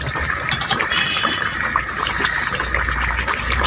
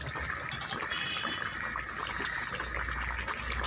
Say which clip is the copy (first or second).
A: first